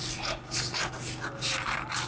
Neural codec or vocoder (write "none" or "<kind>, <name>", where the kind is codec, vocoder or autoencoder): none